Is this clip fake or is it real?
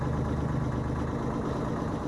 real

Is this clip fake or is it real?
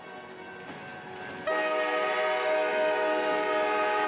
real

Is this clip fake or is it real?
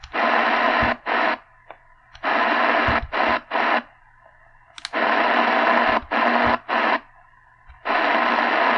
real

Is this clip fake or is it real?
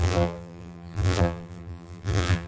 fake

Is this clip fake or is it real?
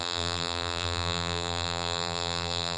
fake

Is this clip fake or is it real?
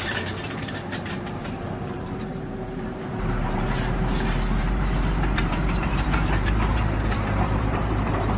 fake